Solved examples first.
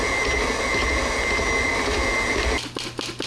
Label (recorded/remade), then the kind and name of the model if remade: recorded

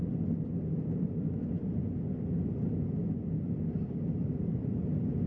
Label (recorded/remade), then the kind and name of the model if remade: recorded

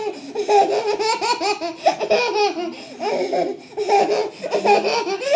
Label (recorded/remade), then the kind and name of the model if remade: recorded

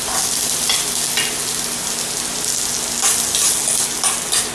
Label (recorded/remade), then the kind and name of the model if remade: recorded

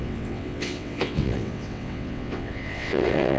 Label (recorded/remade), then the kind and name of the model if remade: remade, vocoder, WaveNeXt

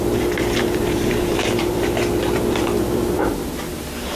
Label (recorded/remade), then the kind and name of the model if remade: remade, vocoder, BigVGAN v2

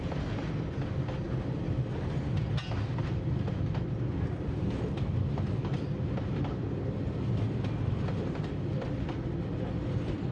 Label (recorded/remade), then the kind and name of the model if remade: recorded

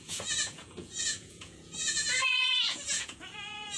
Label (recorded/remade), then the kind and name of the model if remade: remade, vocoder, Vocos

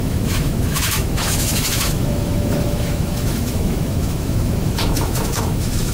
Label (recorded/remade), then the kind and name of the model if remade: remade, autoencoder, DAC-VAE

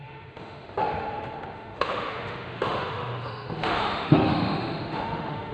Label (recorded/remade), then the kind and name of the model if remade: remade, autoencoder, DAC-VAE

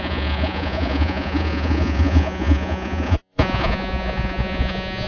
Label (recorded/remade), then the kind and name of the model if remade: remade, vocoder, Vocos